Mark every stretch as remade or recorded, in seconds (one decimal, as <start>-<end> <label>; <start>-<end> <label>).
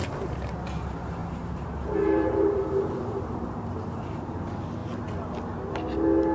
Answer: 0.0-0.5 remade; 0.5-1.2 recorded; 1.2-4.0 remade; 4.0-6.3 recorded